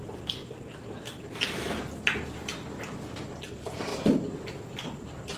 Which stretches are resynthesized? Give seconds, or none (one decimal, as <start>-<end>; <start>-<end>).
0.0-0.4; 3.3-3.9; 5.0-5.4